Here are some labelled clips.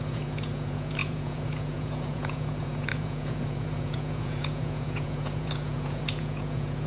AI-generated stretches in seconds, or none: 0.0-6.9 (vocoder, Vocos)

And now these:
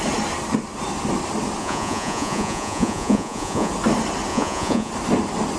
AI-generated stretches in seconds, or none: 1.6-3.7 (vocoder, Vocos); 4.3-4.9

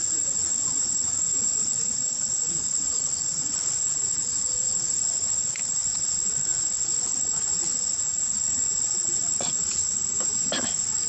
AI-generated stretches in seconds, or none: 0.0-9.8 (vocoder, Vocos)

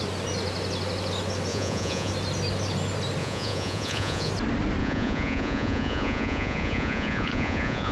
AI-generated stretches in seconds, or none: 1.5-2.1 (vocoder, Vocos); 3.2-4.3; 4.8-7.9

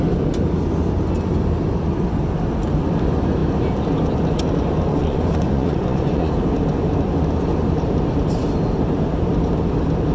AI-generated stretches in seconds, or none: 4.9-6.3 (vocoder, Vocos)

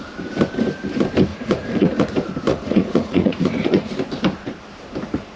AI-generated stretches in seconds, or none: 1.3-2.1 (vocoder, Vocos); 2.5-3.9